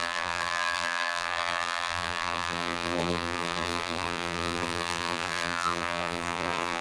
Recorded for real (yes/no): no